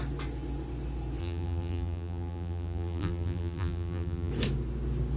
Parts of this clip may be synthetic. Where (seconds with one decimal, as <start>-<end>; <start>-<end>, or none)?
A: 1.2-4.3